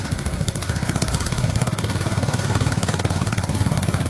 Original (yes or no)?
no